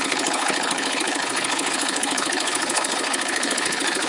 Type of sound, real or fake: fake